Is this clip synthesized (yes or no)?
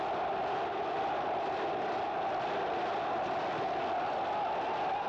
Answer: no